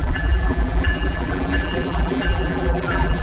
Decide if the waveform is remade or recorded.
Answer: remade